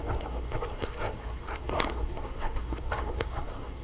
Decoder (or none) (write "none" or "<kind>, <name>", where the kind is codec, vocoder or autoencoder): codec, SNAC